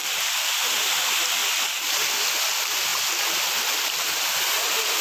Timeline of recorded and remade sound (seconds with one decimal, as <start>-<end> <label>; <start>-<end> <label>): 0.0-0.5 remade; 0.5-5.0 recorded